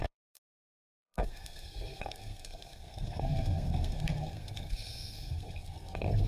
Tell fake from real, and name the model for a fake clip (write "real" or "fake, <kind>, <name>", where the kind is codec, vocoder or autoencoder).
fake, codec, SNAC